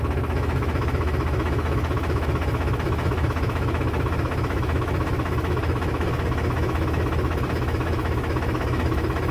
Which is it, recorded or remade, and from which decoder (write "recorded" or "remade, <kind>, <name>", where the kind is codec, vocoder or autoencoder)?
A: remade, autoencoder, DAC-VAE